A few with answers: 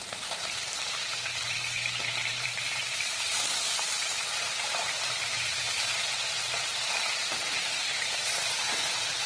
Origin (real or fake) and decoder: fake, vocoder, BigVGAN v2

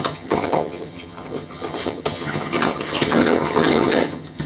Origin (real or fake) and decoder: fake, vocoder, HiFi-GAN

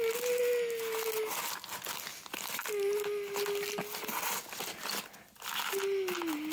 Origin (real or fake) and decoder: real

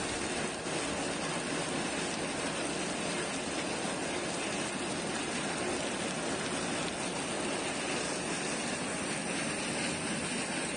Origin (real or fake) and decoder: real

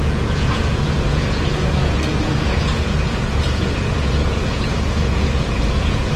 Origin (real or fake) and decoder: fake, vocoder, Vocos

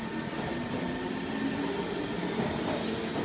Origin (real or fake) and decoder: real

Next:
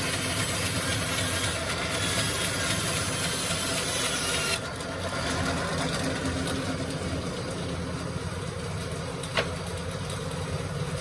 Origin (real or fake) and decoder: real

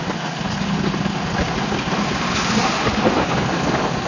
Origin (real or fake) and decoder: real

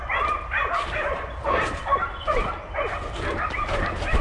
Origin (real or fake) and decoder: real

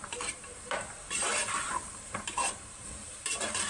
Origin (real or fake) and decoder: fake, vocoder, BigVGAN v2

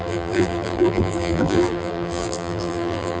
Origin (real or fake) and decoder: fake, vocoder, BigVGAN v2